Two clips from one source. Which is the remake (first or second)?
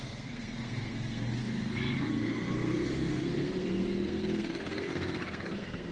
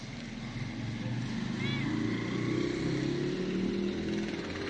first